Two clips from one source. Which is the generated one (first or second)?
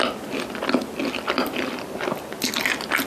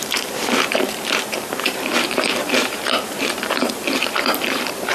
second